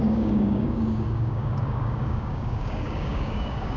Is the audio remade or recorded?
remade